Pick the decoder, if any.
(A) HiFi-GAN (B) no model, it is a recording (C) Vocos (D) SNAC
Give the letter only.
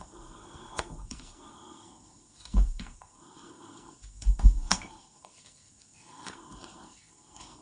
D